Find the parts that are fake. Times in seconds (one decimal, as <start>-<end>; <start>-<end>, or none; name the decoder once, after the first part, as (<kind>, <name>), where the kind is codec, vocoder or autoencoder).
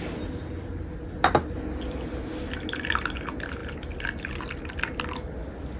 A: none